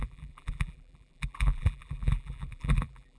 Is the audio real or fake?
fake